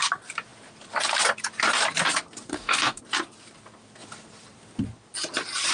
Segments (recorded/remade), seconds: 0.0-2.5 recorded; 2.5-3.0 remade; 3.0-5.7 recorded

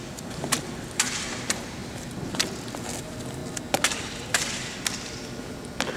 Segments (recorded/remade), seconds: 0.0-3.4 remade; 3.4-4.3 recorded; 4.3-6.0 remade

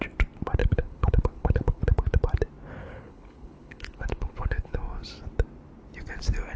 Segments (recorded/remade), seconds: 0.0-0.6 recorded; 0.6-1.8 remade; 1.8-2.8 recorded; 2.8-4.8 remade; 4.8-6.6 recorded

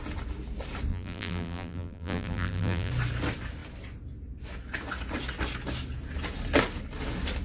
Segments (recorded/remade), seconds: 0.0-0.9 recorded; 0.9-2.9 remade; 2.9-7.4 recorded